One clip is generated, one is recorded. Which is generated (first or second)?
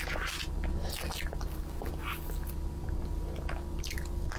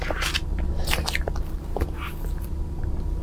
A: second